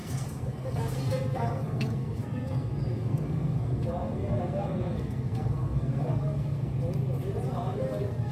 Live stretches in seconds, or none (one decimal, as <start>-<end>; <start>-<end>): 6.7-7.5